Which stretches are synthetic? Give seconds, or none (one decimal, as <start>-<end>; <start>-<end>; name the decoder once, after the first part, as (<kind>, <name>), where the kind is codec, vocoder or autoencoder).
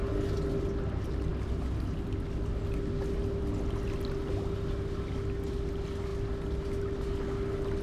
none